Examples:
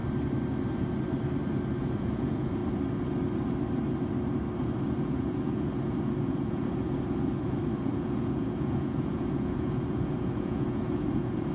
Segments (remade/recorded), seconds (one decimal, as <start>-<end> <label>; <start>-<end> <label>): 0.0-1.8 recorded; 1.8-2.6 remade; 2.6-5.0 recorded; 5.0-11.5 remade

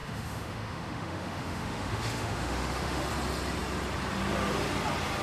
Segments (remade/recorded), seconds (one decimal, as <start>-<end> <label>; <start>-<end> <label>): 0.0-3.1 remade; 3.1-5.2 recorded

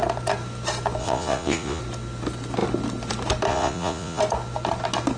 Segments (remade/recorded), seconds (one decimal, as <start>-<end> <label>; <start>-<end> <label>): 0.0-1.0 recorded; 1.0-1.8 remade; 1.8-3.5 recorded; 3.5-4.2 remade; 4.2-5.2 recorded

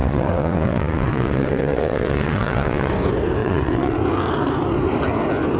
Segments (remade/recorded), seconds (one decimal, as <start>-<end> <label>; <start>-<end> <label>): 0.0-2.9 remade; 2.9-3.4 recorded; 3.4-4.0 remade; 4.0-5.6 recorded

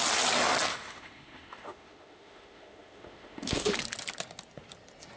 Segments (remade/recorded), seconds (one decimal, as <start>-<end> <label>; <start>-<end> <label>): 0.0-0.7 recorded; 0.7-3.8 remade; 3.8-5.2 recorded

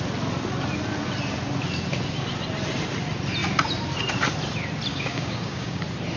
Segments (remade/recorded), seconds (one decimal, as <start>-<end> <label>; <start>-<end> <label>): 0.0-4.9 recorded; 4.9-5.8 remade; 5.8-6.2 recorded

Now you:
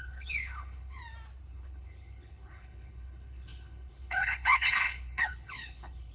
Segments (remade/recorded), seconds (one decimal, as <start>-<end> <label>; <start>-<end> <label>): 0.0-1.0 remade; 1.0-1.5 recorded; 1.5-6.1 remade